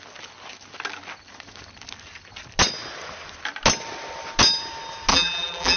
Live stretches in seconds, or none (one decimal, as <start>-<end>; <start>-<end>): 0.0-5.1